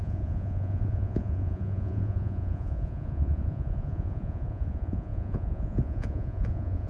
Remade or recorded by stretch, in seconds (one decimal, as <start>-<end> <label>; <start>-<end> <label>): 0.0-6.9 remade